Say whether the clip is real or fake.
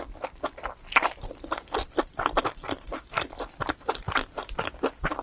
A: real